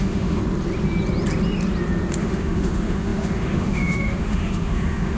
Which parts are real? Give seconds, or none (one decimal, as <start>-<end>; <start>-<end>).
0.4-2.2